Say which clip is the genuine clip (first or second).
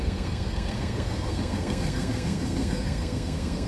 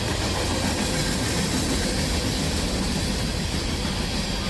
second